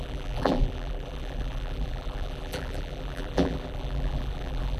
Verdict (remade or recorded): remade